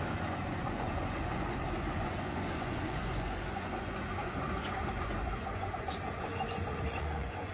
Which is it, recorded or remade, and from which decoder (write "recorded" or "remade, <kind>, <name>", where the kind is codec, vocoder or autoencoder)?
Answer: remade, vocoder, Vocos